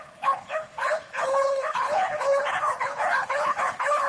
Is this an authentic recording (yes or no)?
no